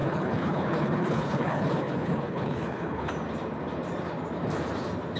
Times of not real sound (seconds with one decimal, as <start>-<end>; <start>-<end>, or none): 0.0-3.1

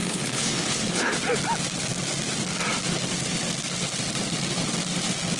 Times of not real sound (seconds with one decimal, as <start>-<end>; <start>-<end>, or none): 0.0-1.1

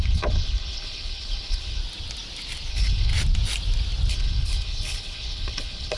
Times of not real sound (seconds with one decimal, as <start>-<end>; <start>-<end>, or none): 0.0-1.8; 2.7-3.1; 4.1-6.0

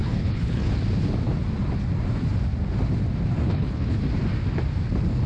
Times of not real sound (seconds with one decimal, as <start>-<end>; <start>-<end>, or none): 0.0-0.7; 3.5-4.0